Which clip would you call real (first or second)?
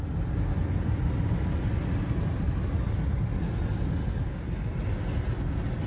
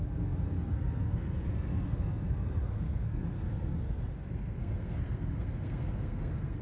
first